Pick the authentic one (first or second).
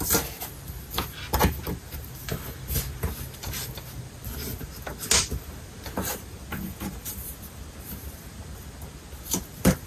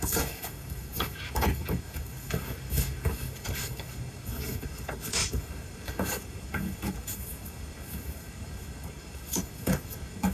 first